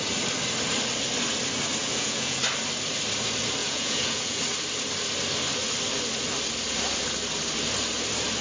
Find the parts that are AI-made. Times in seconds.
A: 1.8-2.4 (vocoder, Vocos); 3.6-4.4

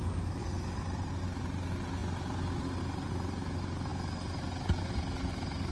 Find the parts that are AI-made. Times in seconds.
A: none